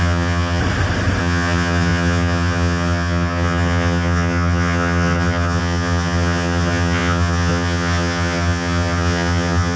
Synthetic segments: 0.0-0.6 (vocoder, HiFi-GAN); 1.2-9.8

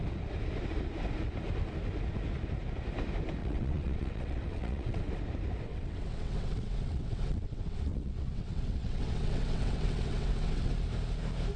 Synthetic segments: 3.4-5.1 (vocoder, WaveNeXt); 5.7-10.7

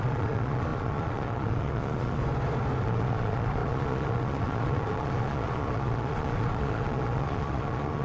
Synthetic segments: 0.0-2.2 (vocoder, Vocos); 2.8-8.0

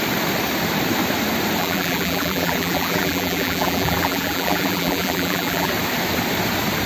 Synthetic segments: 1.6-5.7 (vocoder, BigVGAN v2)

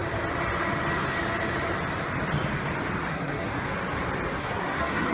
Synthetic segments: 3.1-3.5 (codec, SNAC); 4.4-5.1

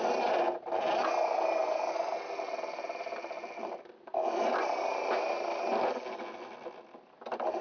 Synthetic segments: none

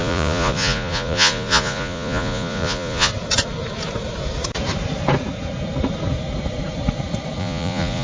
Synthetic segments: 0.0-3.1 (vocoder, Vocos); 7.4-8.0